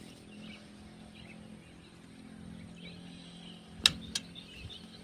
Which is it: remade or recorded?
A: recorded